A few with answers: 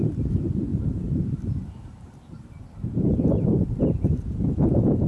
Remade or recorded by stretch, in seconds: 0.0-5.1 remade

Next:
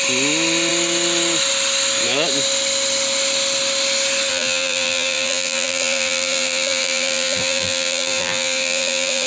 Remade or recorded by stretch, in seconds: 0.0-4.3 recorded; 4.3-9.3 remade

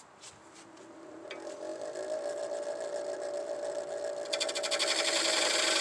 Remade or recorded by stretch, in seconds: 0.0-5.8 recorded